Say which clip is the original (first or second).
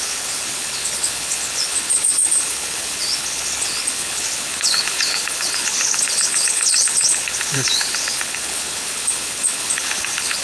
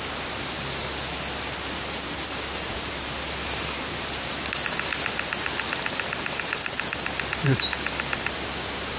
second